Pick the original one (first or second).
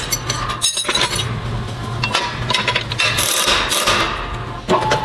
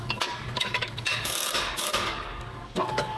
first